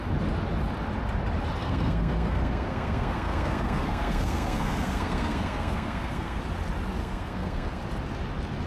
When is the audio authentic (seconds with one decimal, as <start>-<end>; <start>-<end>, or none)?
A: 0.0-1.6; 6.4-7.0; 7.8-8.7